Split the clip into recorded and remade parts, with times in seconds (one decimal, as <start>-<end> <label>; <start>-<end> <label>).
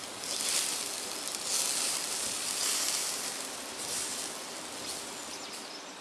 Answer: 0.0-1.9 recorded; 1.9-4.1 remade; 4.1-5.5 recorded; 5.5-6.0 remade